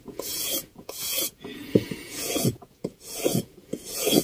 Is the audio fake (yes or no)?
yes